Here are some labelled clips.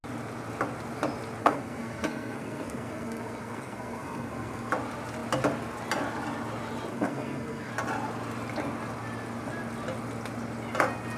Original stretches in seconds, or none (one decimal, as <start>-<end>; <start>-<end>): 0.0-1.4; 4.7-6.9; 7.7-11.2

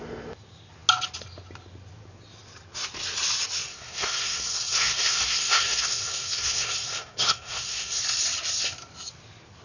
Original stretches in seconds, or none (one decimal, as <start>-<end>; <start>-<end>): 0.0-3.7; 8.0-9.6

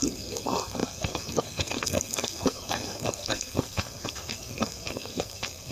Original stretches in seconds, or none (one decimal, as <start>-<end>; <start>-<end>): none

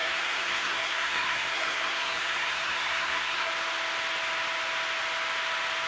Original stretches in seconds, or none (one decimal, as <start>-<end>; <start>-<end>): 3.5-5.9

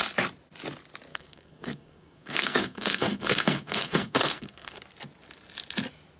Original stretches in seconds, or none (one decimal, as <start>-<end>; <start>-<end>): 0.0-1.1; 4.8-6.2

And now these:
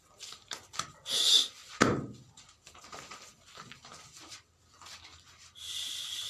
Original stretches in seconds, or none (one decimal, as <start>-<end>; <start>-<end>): 0.0-6.3